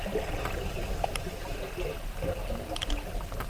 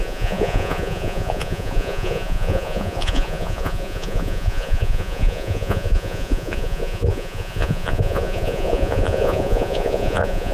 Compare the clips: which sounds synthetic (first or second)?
second